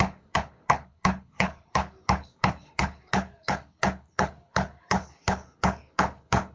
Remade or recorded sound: remade